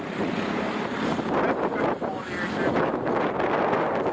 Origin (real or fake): real